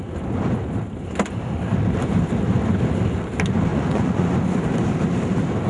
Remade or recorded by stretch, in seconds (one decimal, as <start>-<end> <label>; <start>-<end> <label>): 0.0-3.7 recorded; 3.7-4.3 remade; 4.3-5.7 recorded